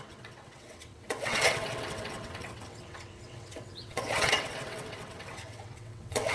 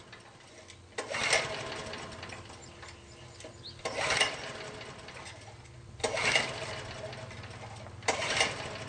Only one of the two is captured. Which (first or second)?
second